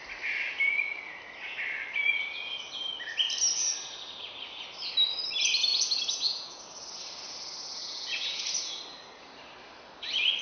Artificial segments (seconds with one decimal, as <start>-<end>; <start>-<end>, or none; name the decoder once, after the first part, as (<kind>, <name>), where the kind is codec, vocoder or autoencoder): 5.7-6.6 (vocoder, Vocos); 7.8-8.8